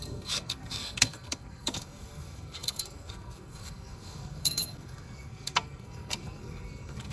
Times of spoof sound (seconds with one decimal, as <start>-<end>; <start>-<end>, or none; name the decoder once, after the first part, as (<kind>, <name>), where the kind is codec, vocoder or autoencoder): 0.0-7.1 (codec, SNAC)